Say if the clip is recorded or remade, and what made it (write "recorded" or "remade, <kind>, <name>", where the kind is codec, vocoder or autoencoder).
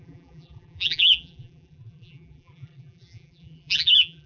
remade, vocoder, BigVGAN v2